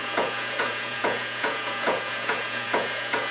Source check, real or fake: fake